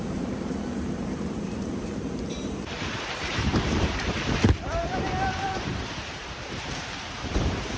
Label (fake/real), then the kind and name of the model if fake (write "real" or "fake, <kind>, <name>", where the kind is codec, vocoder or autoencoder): fake, vocoder, BigVGAN v2